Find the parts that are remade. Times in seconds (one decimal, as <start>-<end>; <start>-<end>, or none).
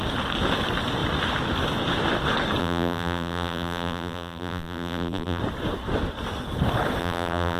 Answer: 2.6-5.4; 7.0-7.6